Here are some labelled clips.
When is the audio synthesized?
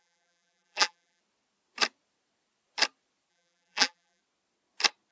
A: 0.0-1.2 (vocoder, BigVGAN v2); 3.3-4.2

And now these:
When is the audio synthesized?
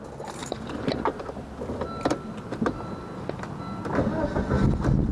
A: 0.4-1.3 (vocoder, BigVGAN v2)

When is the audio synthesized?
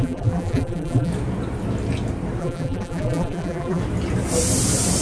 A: 0.0-1.1 (vocoder, BigVGAN v2); 2.4-3.8